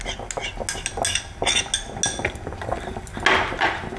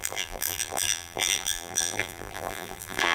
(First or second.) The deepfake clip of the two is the second